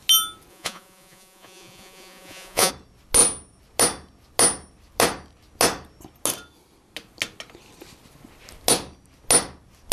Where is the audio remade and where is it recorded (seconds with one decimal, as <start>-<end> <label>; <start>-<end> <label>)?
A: 0.0-0.5 recorded; 0.5-2.7 remade; 2.7-9.9 recorded